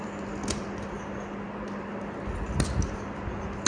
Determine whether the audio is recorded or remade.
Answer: recorded